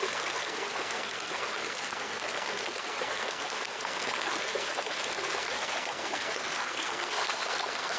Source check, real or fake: fake